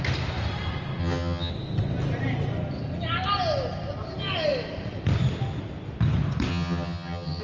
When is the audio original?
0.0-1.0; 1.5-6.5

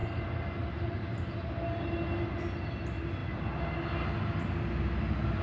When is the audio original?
0.0-5.4

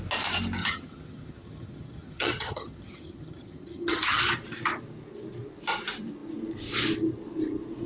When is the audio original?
0.0-0.6; 4.2-7.9

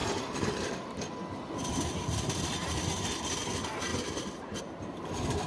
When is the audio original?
0.6-3.9; 4.6-5.5

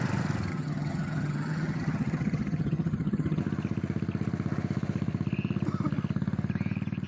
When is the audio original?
0.0-0.5; 3.4-7.1